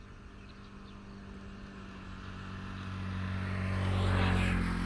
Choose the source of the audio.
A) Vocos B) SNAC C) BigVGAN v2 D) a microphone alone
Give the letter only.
D